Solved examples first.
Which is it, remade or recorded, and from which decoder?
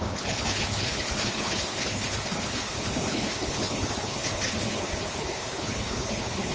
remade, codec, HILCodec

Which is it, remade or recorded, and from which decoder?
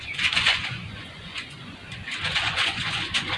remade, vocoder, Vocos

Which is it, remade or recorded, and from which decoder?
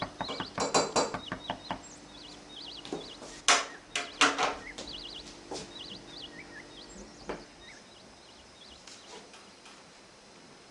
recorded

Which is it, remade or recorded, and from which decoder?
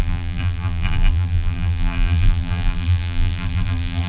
remade, vocoder, BigVGAN v2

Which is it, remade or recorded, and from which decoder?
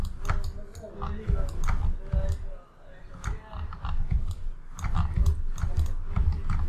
recorded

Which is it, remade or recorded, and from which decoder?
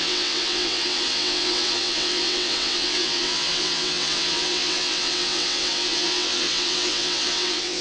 remade, vocoder, WaveNeXt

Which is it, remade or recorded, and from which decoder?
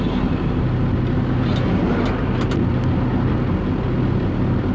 recorded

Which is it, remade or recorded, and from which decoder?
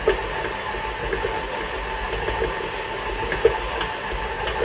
recorded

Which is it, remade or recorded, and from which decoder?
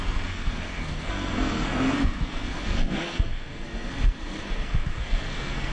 remade, codec, SNAC